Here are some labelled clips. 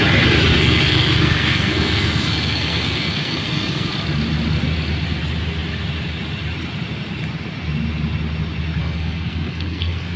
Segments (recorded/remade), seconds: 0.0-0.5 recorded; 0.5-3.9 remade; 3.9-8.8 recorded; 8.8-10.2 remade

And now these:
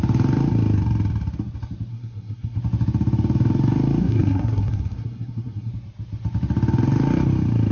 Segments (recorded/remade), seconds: 0.0-1.9 recorded; 1.9-2.6 remade; 2.6-4.0 recorded; 4.0-5.7 remade; 5.7-7.7 recorded

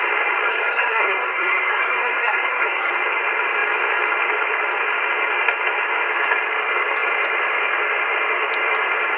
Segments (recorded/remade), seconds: 0.0-0.5 recorded; 0.5-2.9 remade; 2.9-9.2 recorded